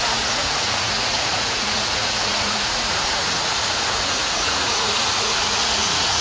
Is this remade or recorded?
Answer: remade